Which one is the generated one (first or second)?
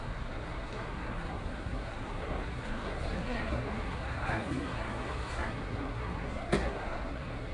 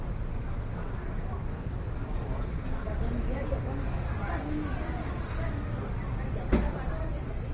first